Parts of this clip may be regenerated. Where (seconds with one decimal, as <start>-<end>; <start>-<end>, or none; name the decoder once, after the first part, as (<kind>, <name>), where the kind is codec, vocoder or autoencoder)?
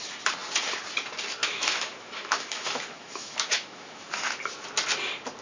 1.4-4.4 (autoencoder, DAC-VAE)